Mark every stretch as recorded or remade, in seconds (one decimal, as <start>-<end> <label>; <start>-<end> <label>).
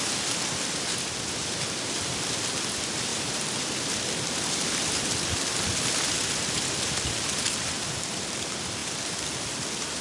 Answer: 0.0-10.0 recorded